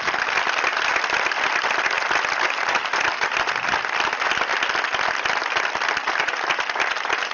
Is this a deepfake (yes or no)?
no